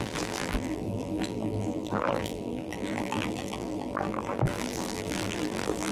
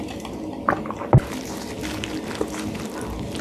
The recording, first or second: second